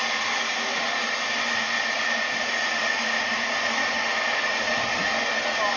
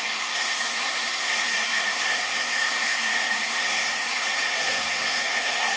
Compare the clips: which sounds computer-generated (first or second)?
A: second